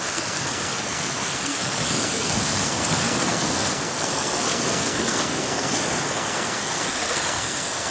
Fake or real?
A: fake